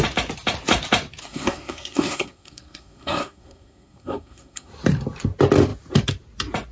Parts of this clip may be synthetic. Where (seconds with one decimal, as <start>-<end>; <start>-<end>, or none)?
1.2-4.7